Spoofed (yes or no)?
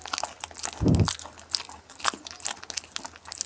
no